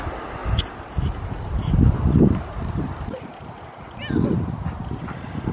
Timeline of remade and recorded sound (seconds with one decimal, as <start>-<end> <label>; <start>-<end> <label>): 0.0-5.5 recorded